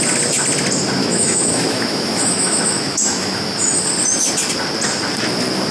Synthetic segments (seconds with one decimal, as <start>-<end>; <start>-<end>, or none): 1.0-3.8